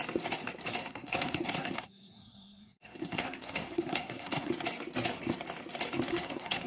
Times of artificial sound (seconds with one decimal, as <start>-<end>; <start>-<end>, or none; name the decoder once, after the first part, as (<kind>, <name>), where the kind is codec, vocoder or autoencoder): 0.8-4.5 (codec, SNAC); 6.1-6.7